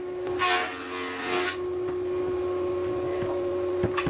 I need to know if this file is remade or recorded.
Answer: recorded